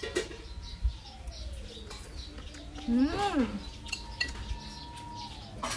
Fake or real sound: real